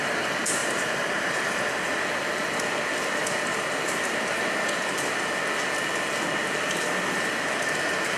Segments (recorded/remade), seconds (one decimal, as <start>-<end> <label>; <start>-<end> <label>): 0.0-0.6 recorded; 0.6-1.7 remade; 1.7-8.2 recorded